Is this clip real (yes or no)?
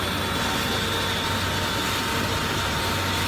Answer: yes